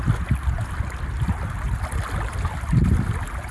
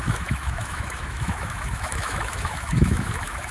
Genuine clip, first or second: first